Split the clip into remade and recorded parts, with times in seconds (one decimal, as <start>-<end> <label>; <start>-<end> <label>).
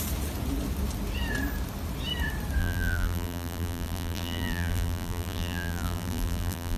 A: 0.0-2.6 recorded; 2.6-6.8 remade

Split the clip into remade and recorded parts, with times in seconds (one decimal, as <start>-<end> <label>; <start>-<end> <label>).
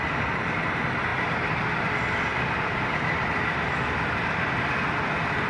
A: 0.0-1.1 recorded; 1.1-1.7 remade; 1.7-5.5 recorded